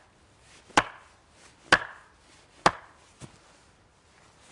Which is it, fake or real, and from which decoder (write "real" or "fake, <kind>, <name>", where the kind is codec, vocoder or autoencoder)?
real